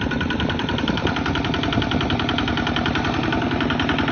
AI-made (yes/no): no